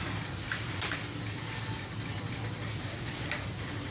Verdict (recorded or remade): recorded